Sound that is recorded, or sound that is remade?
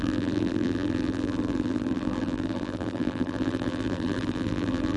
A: remade